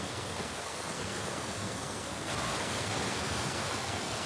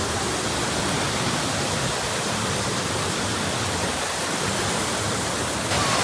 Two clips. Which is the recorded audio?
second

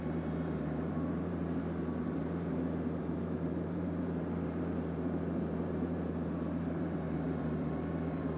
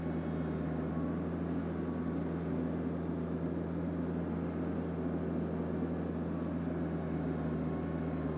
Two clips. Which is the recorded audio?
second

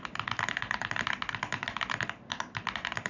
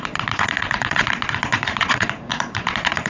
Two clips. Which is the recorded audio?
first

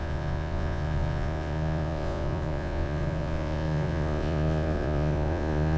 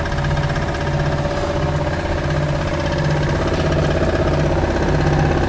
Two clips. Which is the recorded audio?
second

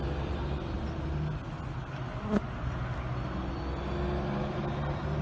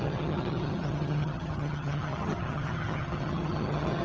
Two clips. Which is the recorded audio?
first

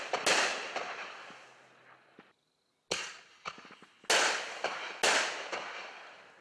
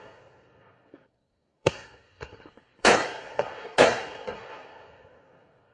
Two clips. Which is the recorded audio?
first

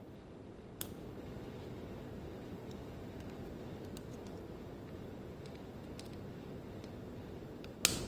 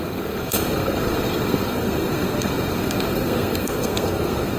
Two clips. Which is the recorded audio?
first